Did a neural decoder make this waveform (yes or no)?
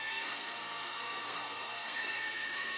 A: yes